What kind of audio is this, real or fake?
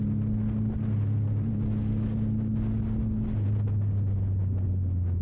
real